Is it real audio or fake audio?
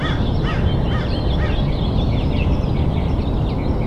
real